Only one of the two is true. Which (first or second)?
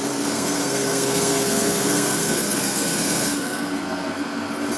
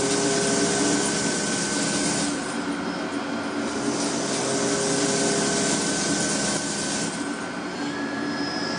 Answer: second